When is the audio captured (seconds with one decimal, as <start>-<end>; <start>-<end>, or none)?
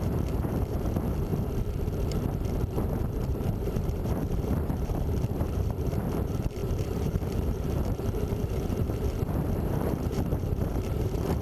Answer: 1.3-3.0